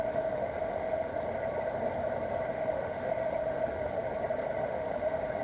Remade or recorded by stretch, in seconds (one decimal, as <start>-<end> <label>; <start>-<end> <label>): 0.0-1.1 remade; 1.1-2.5 recorded; 2.5-4.0 remade; 4.0-4.6 recorded; 4.6-5.4 remade